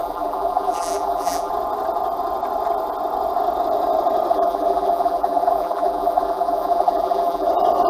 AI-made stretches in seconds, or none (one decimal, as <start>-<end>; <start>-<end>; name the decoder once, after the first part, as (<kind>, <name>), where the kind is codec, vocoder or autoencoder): 0.0-1.5 (vocoder, BigVGAN v2); 4.3-7.5